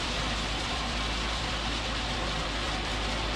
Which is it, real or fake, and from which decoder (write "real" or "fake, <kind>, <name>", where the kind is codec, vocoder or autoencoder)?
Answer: fake, vocoder, BigVGAN v2